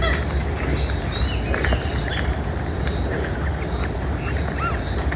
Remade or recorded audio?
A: recorded